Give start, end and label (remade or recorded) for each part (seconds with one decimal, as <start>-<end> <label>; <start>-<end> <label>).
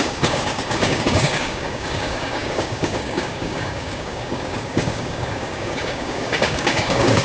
0.0-7.2 remade